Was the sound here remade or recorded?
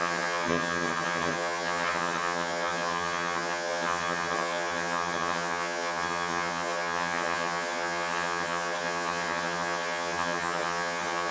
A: remade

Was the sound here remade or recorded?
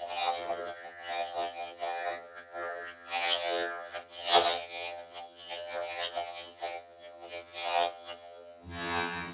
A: remade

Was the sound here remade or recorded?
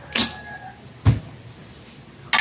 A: recorded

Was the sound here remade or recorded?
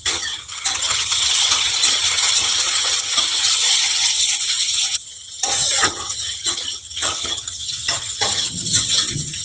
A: remade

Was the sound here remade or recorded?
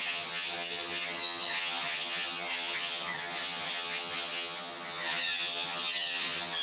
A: remade